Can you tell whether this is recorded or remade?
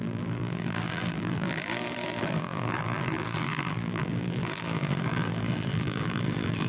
remade